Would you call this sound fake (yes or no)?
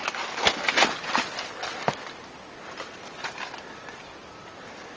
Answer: no